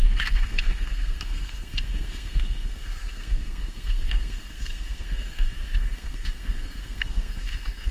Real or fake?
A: fake